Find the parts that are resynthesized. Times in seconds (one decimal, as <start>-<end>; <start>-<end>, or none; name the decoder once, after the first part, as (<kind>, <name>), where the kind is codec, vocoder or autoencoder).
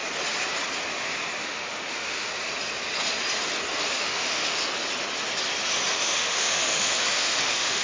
1.4-2.3 (autoencoder, DAC-VAE); 3.9-4.6; 5.9-7.8